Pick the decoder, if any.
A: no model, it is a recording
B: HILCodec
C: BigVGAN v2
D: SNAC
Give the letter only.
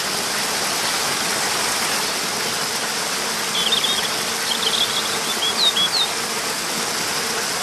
A